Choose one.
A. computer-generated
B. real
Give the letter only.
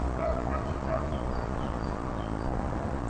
A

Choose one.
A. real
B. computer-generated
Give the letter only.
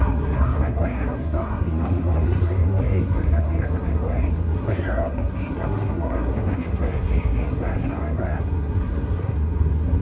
B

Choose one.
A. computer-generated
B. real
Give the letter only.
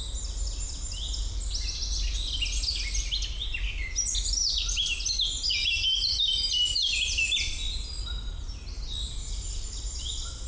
B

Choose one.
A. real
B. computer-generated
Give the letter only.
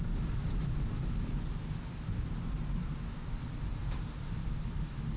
A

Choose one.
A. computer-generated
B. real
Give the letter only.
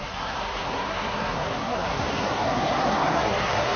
A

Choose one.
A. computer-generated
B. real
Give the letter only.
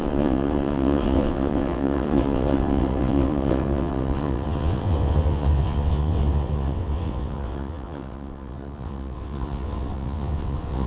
A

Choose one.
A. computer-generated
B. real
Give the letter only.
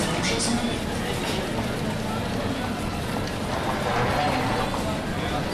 B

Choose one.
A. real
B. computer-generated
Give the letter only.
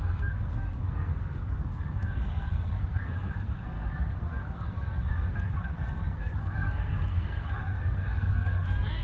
B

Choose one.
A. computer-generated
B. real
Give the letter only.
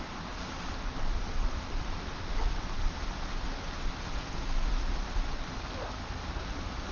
B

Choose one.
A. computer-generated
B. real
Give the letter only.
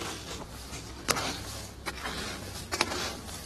B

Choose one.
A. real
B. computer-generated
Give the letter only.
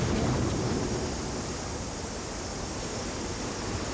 B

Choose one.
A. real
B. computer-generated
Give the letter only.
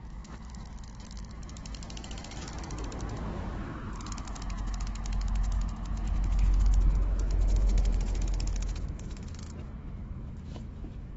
B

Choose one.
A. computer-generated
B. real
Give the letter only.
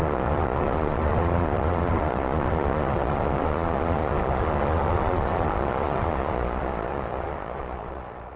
A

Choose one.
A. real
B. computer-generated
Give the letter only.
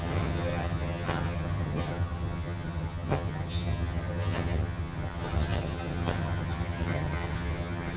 B